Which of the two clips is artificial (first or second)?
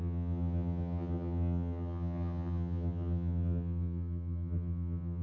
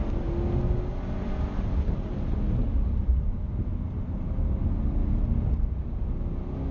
first